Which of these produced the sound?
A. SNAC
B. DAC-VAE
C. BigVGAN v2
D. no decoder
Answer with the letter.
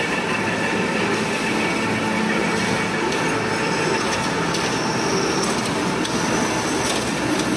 D